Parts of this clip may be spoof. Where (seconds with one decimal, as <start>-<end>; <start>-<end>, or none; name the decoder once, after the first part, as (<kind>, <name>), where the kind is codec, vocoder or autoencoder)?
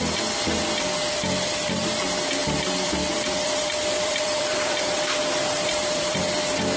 2.4-6.2 (vocoder, BigVGAN v2)